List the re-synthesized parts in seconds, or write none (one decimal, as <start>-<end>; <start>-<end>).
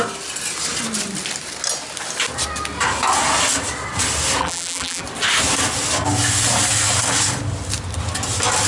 4.4-5.0